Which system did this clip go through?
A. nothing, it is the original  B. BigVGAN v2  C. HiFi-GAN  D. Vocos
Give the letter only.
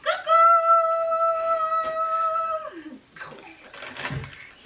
A